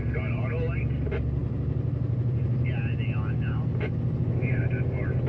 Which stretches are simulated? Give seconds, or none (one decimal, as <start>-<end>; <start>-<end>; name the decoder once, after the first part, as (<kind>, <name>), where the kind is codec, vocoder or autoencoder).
none